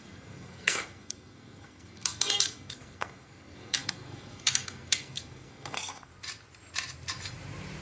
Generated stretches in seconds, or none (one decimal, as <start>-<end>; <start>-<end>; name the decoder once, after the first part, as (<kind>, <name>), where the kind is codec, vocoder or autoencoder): 0.0-6.1 (codec, SNAC)

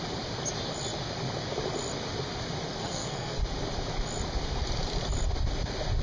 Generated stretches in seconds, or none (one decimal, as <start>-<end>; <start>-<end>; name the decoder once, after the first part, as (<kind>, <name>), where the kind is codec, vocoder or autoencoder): 2.8-3.4 (codec, SNAC)